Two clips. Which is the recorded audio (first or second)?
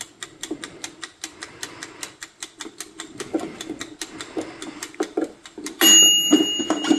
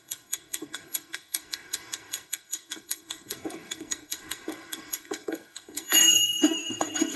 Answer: first